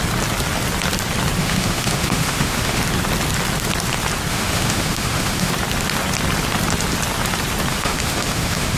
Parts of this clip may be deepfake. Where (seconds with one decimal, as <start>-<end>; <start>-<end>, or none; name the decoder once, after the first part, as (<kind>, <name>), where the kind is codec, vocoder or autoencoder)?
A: 1.4-2.8 (autoencoder, DAC-VAE); 4.3-5.5; 7.7-8.8